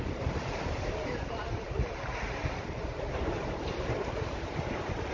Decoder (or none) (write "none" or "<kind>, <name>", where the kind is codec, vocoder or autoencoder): vocoder, BigVGAN v2